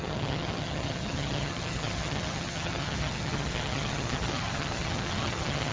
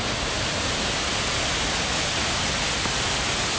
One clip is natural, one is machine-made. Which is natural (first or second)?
second